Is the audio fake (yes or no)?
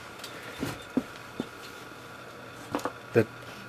no